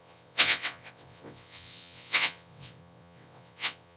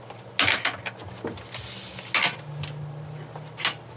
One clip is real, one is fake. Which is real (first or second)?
second